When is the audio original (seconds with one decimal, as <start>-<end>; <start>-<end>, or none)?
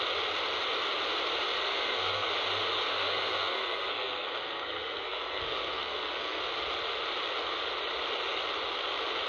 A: 0.0-1.6; 2.3-2.9; 6.4-9.3